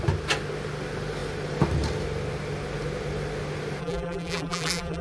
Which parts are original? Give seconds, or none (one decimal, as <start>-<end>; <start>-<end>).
0.0-3.8